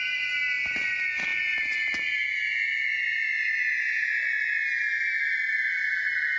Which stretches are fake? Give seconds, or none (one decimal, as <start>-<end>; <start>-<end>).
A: none